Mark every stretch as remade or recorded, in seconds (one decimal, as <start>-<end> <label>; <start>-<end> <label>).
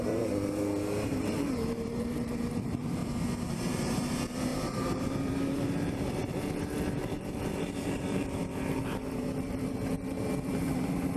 0.0-3.0 remade; 3.0-3.5 recorded; 3.5-6.2 remade; 6.2-7.0 recorded; 7.0-11.2 remade